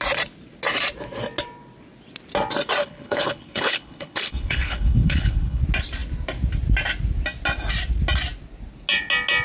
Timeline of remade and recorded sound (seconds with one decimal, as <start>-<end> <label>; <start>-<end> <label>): 0.0-2.8 recorded; 2.8-5.6 remade; 5.6-9.4 recorded